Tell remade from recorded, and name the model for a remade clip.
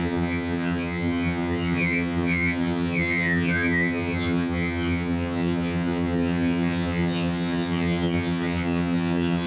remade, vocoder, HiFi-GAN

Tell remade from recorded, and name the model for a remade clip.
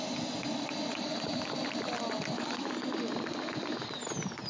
recorded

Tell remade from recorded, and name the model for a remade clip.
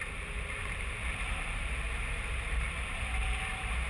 remade, vocoder, BigVGAN v2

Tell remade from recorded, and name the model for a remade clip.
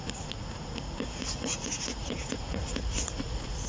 remade, vocoder, Vocos